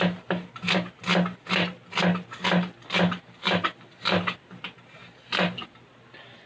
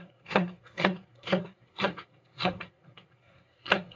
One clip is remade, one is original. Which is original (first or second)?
first